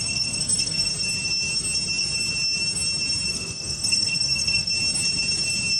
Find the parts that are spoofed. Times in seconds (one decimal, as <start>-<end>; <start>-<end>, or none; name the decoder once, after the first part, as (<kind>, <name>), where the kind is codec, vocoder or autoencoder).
0.0-0.9 (codec, SNAC); 3.3-4.7